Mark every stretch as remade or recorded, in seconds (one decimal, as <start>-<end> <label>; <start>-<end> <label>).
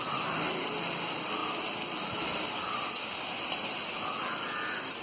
0.0-5.0 recorded